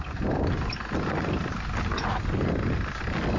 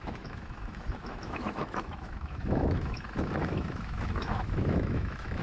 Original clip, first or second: first